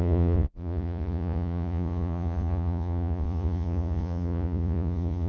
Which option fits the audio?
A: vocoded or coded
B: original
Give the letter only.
A